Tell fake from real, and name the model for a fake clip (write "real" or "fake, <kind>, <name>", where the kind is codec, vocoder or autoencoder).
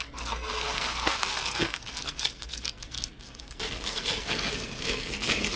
fake, codec, SNAC